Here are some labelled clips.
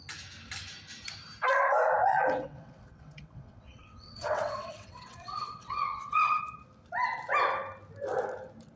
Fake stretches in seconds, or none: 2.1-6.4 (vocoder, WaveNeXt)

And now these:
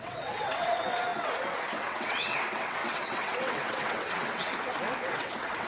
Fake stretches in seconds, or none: 0.0-4.5 (vocoder, WaveNeXt); 5.1-5.7

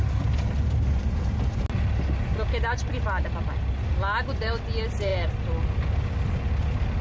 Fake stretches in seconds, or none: none

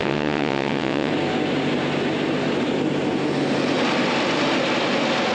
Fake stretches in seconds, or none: 0.0-1.1 (vocoder, WaveNeXt)

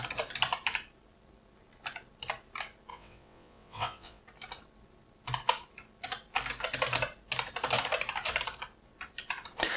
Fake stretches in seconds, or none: 2.9-4.2 (vocoder, WaveNeXt)

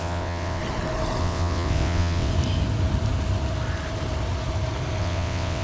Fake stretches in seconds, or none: 0.0-0.6 (vocoder, WaveNeXt); 1.2-2.3; 5.0-5.6

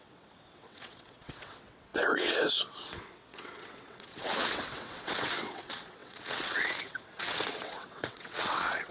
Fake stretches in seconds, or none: 0.0-8.9 (vocoder, WaveNeXt)

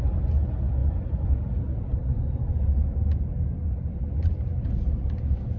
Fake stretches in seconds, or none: none